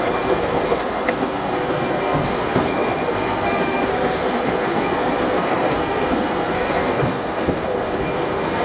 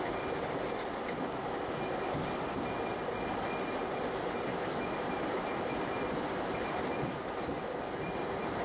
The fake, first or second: first